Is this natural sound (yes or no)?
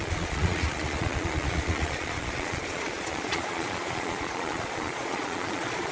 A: no